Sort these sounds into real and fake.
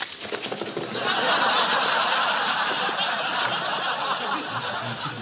real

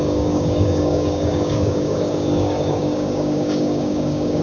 fake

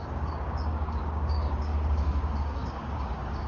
fake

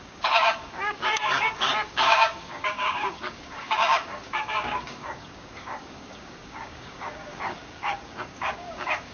fake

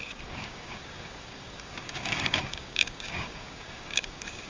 fake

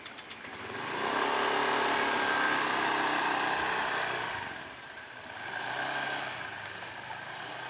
real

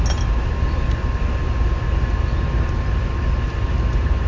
real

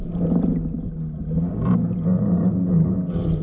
real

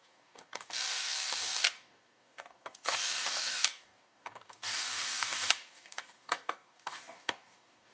fake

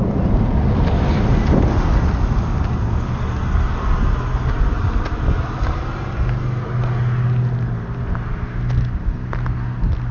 real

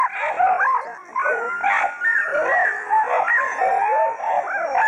real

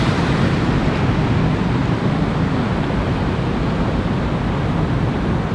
real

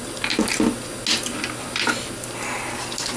real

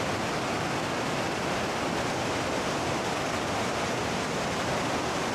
real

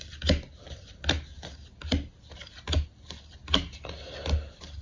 real